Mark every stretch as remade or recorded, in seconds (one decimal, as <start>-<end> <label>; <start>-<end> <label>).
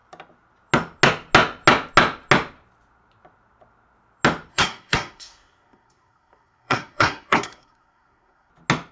0.0-4.5 recorded; 4.5-8.5 remade; 8.5-8.9 recorded